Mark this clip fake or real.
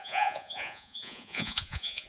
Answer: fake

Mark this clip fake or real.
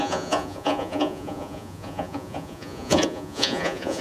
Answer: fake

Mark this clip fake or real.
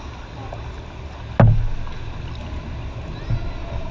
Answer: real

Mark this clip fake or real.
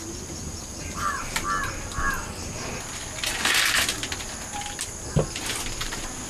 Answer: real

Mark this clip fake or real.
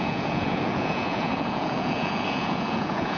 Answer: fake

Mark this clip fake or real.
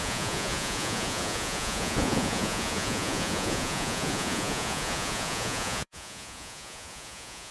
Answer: fake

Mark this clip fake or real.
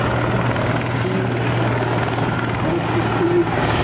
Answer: real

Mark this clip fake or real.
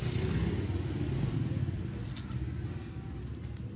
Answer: real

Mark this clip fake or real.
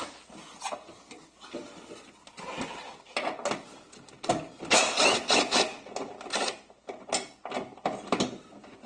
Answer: real